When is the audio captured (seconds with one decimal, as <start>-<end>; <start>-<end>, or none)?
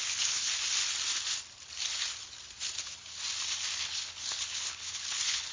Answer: 0.5-3.8